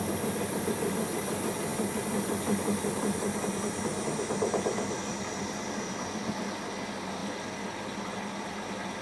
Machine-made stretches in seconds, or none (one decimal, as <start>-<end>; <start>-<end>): none